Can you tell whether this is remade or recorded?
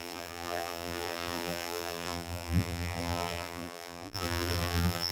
remade